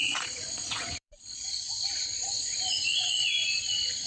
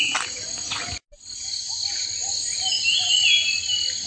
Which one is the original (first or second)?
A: second